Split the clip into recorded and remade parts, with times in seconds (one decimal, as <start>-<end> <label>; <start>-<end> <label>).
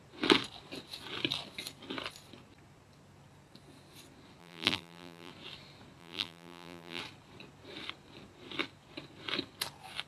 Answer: 0.0-4.4 recorded; 4.4-5.3 remade; 5.3-6.0 recorded; 6.0-7.0 remade; 7.0-10.1 recorded